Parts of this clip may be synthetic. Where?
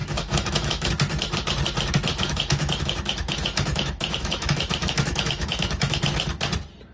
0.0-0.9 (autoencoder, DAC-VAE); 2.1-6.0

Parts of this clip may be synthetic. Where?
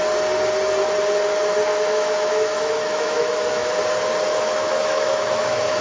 1.7-3.8 (autoencoder, DAC-VAE); 4.3-5.8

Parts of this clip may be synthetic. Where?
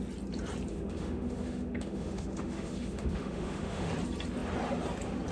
0.7-3.9 (autoencoder, DAC-VAE)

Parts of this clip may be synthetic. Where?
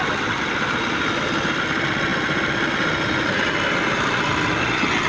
none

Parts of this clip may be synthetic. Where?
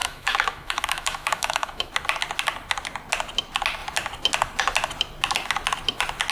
0.0-1.9 (autoencoder, DAC-VAE)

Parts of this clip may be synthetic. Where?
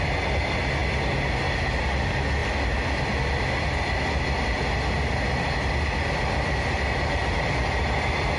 none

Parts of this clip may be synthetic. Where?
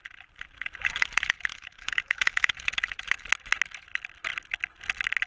1.5-2.5 (autoencoder, DAC-VAE)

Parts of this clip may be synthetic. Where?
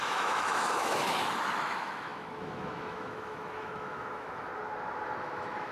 0.0-4.5 (autoencoder, DAC-VAE); 5.2-5.7